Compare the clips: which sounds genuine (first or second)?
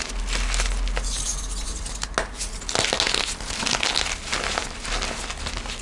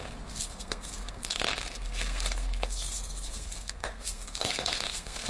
first